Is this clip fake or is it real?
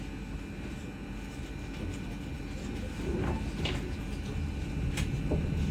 real